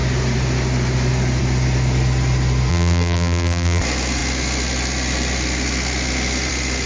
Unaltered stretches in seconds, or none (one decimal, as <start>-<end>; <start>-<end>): 0.0-2.7; 3.8-6.9